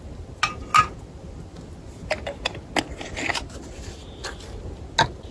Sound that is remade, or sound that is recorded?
recorded